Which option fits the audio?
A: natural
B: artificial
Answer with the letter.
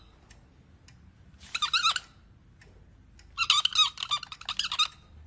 A